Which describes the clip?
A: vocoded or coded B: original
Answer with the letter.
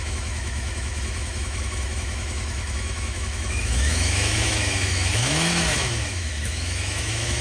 A